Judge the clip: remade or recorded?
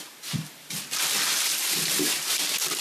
recorded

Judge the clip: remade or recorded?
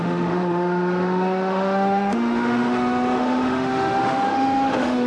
remade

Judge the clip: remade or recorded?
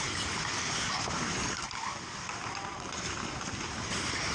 remade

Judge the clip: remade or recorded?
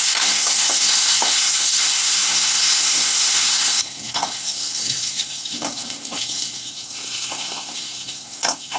remade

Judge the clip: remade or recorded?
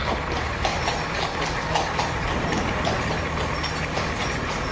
recorded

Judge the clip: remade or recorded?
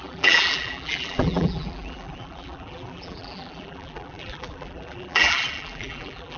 remade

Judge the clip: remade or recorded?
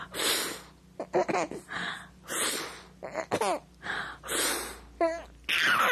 recorded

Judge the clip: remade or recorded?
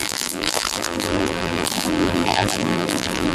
remade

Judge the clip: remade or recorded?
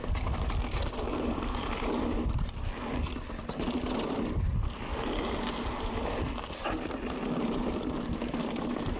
recorded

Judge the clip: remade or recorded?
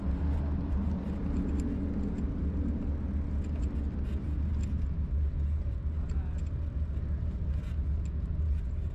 recorded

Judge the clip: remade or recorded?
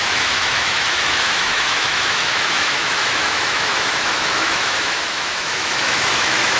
remade